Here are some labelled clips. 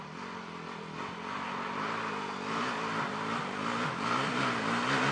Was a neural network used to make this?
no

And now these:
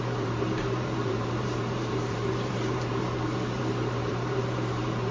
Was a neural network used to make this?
yes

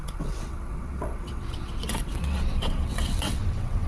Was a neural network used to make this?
yes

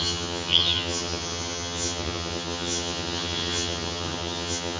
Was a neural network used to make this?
yes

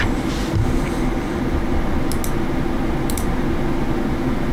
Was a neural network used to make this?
no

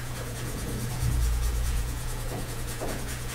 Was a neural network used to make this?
yes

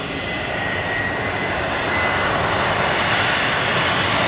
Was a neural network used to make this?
no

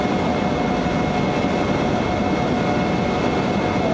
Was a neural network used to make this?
no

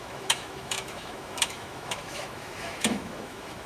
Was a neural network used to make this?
yes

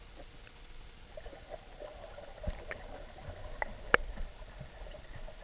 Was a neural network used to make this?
no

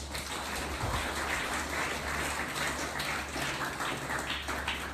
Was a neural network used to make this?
no